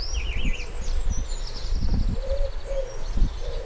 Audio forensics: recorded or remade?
recorded